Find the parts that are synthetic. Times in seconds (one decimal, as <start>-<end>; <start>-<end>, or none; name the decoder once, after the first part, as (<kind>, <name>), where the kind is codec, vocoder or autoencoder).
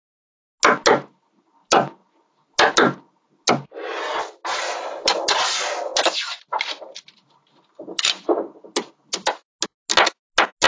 none